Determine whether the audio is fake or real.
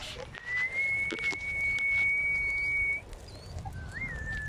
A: real